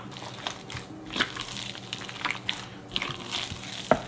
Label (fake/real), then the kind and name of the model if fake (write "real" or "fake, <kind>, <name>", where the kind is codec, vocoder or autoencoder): real